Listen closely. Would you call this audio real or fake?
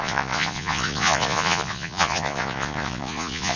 fake